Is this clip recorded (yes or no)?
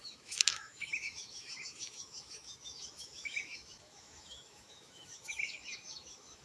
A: no